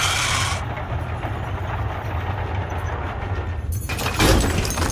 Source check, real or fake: real